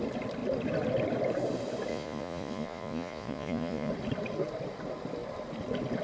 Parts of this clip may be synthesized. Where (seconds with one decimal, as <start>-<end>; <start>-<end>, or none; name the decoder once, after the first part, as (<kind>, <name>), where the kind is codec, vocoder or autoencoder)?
1.9-3.9 (vocoder, Vocos)